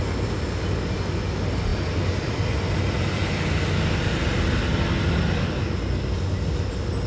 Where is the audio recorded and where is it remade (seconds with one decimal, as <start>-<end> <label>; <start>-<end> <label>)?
0.0-7.1 recorded